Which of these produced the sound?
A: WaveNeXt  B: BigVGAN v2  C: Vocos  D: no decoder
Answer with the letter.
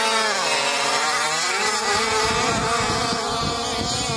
D